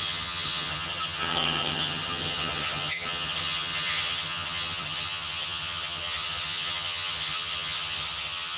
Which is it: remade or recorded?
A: remade